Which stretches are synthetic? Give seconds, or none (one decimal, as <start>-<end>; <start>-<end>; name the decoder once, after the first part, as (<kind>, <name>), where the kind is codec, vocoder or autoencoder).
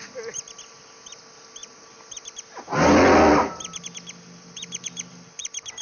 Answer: none